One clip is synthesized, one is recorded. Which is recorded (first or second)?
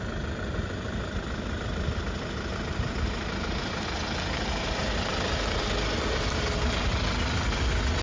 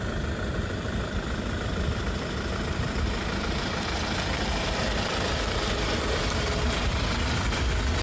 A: first